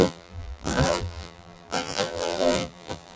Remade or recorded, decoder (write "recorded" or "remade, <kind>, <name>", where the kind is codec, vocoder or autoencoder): remade, vocoder, BigVGAN v2